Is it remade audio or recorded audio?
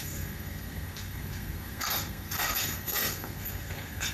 remade